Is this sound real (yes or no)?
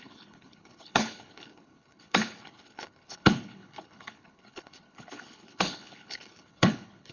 no